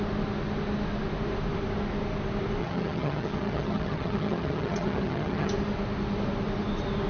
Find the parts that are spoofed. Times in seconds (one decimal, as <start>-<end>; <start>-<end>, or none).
2.6-5.5